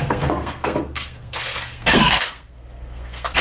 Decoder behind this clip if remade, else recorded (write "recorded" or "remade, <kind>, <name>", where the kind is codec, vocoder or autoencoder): remade, codec, SNAC